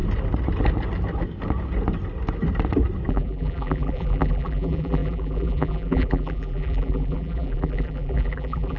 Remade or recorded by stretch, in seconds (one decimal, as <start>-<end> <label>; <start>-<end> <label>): 0.0-3.1 recorded; 3.1-8.8 remade